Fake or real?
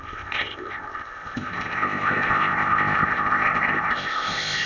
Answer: fake